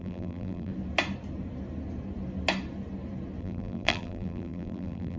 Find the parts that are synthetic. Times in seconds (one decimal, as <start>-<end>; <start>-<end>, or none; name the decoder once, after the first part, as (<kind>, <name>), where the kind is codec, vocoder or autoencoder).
0.0-0.7 (vocoder, BigVGAN v2); 3.4-5.2